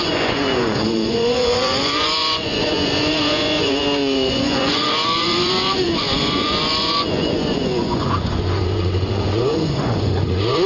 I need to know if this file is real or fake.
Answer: fake